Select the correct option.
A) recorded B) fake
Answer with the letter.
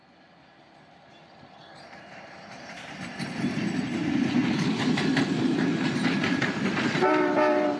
B